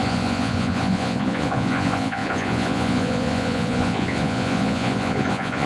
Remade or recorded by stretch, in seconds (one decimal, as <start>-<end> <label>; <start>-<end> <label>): 0.0-5.7 remade